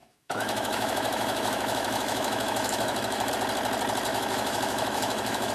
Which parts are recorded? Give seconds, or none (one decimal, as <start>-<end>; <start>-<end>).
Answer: 3.3-4.1